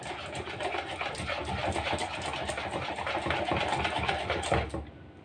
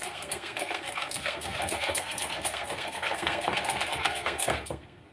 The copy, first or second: second